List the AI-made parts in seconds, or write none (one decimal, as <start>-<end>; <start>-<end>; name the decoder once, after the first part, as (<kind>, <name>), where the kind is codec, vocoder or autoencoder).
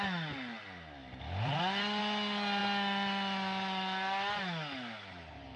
1.0-2.0 (vocoder, BigVGAN v2)